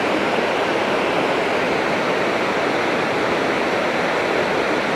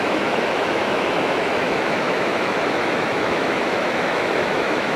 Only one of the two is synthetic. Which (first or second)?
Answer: second